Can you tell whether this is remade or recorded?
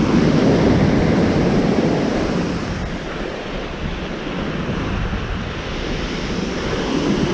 remade